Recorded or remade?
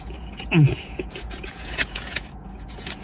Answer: remade